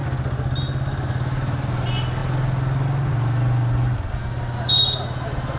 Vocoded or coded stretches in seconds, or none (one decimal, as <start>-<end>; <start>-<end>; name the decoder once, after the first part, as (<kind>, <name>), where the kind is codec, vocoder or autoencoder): none